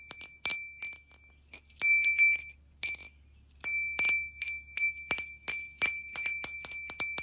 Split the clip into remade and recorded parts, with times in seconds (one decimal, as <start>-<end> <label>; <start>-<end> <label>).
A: 0.0-7.2 recorded